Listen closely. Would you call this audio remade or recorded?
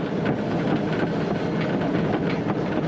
recorded